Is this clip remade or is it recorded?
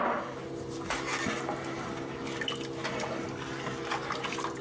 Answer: recorded